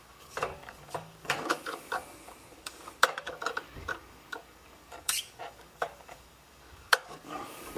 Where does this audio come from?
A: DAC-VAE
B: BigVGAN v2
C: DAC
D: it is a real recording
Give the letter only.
C